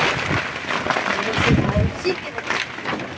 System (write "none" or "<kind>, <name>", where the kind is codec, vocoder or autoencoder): none